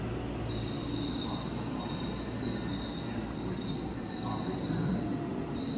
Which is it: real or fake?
real